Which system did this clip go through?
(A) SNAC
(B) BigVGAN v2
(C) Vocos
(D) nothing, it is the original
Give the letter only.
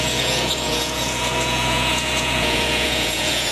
C